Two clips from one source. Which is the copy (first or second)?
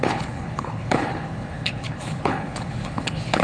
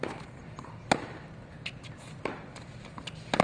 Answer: first